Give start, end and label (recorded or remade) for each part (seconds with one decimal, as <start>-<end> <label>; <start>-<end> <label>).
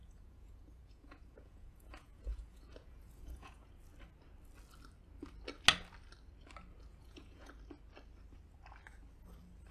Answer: 0.0-3.7 remade; 3.7-6.9 recorded; 6.9-7.5 remade; 7.5-9.7 recorded